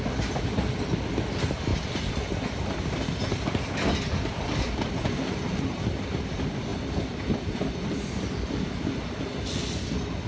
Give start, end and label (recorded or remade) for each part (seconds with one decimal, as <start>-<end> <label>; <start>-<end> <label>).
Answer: 0.0-10.3 recorded